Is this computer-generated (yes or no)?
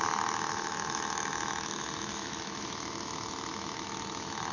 yes